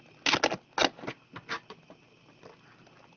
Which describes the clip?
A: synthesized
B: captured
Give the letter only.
B